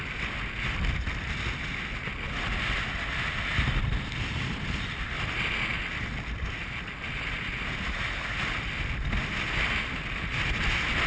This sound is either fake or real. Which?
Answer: real